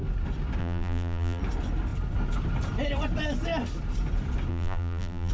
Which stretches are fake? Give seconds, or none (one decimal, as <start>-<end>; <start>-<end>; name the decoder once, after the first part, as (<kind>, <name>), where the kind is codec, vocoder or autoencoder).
0.6-1.4 (vocoder, BigVGAN v2); 4.5-5.3